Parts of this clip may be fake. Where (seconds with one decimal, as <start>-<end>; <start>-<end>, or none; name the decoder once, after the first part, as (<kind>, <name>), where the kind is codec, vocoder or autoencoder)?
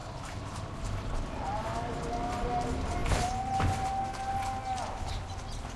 none